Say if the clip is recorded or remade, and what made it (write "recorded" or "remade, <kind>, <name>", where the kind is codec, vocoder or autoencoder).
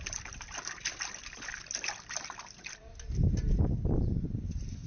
recorded